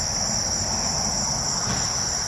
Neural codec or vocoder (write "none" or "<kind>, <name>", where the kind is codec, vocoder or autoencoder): none